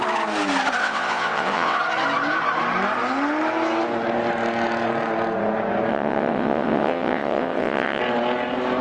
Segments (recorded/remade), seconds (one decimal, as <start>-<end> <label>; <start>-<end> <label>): 0.0-0.8 recorded; 0.8-1.8 remade; 1.8-5.9 recorded; 5.9-8.0 remade; 8.0-8.8 recorded